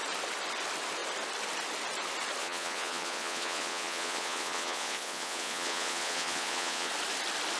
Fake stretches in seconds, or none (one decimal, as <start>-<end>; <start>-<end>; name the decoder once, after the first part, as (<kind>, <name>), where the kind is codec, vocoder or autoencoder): 2.4-6.9 (vocoder, Vocos)